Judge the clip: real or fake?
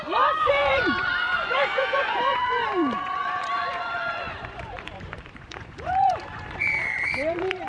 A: fake